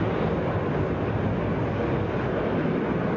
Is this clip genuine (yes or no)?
yes